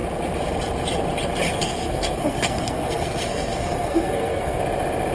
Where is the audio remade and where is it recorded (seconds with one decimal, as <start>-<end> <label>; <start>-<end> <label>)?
0.0-1.5 recorded; 1.5-4.6 remade; 4.6-5.1 recorded